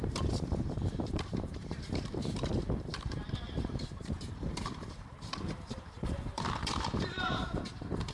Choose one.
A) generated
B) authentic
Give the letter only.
A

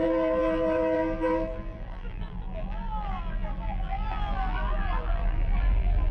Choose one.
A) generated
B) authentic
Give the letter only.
A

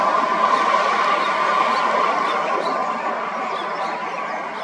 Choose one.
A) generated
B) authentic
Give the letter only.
B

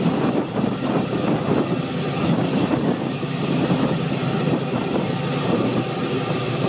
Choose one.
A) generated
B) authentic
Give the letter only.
A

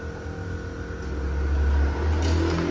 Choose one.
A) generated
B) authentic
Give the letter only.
B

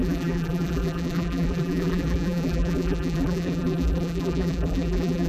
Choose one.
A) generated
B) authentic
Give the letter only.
A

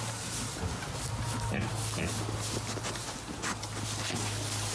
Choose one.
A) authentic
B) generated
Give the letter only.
A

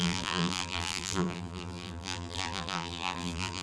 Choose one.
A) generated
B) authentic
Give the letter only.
A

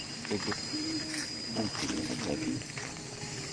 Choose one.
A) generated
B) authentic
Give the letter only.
A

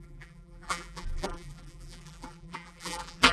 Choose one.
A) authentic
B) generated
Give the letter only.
B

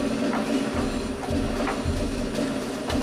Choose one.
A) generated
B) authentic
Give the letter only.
B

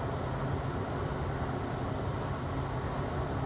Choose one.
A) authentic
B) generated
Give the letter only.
A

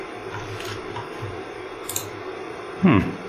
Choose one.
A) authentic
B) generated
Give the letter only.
B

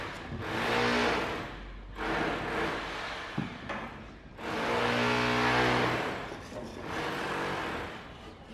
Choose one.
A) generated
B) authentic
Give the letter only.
B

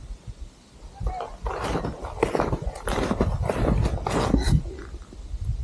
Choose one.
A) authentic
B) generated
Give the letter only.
A